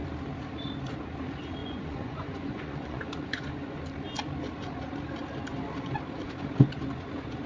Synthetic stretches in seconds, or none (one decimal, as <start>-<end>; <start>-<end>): 1.6-3.8